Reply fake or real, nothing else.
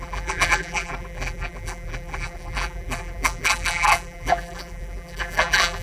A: fake